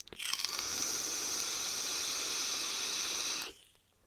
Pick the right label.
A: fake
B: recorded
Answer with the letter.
B